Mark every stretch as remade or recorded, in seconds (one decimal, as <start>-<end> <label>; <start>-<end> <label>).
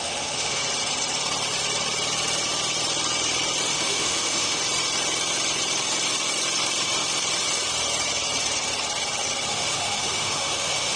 0.0-0.6 remade; 0.6-3.7 recorded; 3.7-4.6 remade; 4.6-9.5 recorded; 9.5-11.0 remade